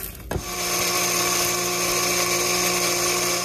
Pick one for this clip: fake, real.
real